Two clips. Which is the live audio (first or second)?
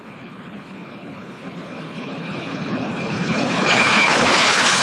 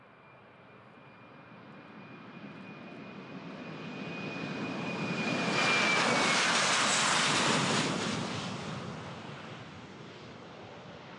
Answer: second